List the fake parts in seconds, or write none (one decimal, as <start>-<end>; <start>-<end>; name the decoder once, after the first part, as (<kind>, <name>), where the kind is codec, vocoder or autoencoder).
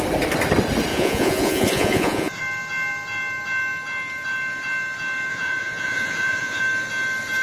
0.9-2.4 (vocoder, Vocos); 5.3-6.6